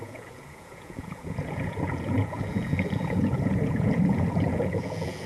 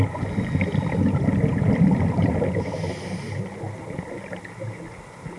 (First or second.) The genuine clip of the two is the second